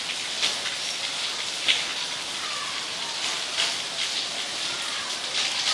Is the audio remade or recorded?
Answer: recorded